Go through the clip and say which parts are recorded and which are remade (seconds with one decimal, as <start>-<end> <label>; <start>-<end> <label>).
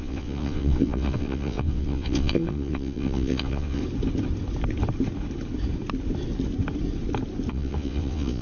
0.0-3.8 remade; 3.8-7.5 recorded; 7.5-8.4 remade